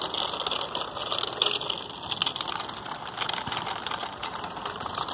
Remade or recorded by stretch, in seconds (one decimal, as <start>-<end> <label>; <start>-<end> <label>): 0.0-4.0 recorded; 4.0-5.1 remade